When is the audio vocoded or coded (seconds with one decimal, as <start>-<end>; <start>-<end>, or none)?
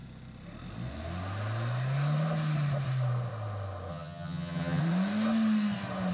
3.9-4.8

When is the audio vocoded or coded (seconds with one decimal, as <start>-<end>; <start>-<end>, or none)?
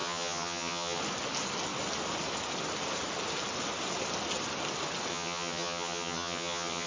0.0-1.0; 5.1-6.9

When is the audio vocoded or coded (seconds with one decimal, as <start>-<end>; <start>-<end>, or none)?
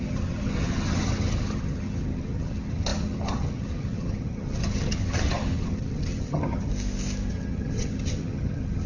0.0-6.7; 7.3-8.9